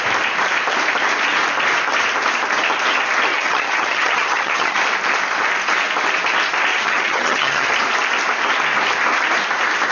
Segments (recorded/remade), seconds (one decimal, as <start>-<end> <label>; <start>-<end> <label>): 0.0-3.3 recorded; 3.3-4.8 remade; 4.8-6.7 recorded; 6.7-7.7 remade; 7.7-9.9 recorded